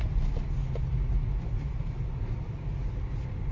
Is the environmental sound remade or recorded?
recorded